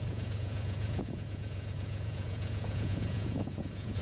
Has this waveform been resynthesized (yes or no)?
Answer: yes